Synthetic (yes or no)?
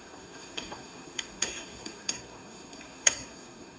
yes